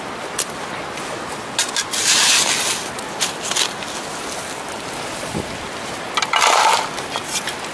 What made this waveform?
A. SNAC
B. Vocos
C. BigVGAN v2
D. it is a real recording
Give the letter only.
D